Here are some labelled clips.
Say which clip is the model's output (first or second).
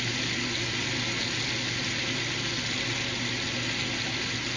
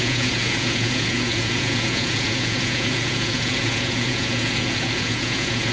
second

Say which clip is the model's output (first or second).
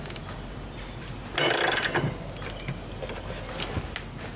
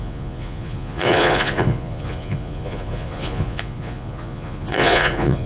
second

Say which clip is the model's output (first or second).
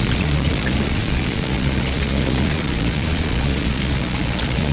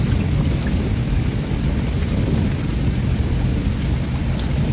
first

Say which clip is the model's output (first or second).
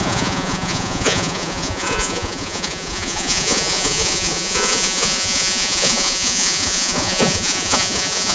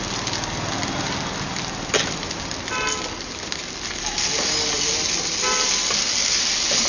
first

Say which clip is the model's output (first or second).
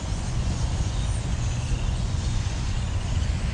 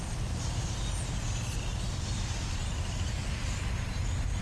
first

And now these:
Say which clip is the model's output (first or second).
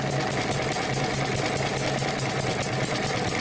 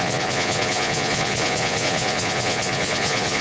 second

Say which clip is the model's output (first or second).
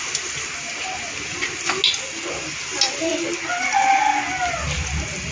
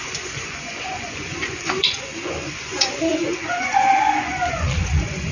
second